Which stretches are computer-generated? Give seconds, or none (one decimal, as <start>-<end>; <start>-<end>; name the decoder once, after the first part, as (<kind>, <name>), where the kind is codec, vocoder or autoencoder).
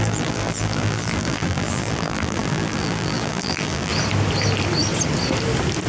0.0-3.9 (vocoder, BigVGAN v2)